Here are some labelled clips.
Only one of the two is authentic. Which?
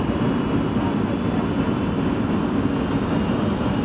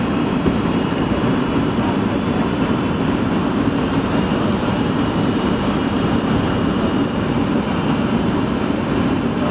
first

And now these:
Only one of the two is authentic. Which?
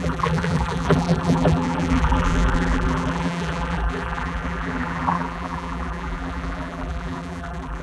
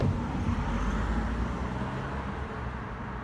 second